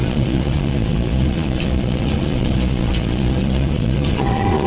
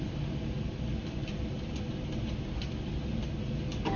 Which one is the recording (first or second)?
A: second